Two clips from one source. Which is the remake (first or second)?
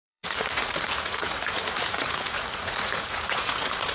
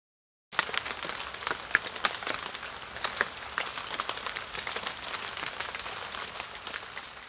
first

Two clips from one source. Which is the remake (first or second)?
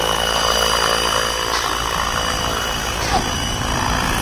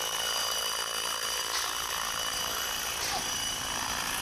second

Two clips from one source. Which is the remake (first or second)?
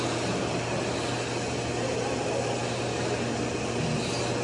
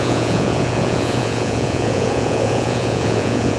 second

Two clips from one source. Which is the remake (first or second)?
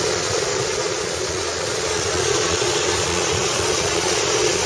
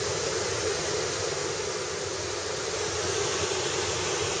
first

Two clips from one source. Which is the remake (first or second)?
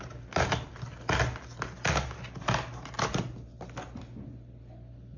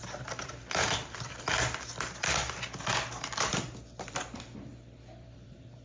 second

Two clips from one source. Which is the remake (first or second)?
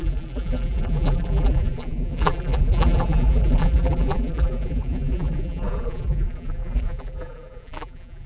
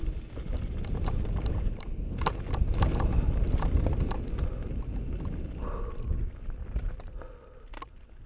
first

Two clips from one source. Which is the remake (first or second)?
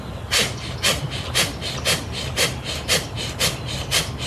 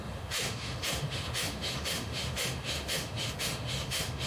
second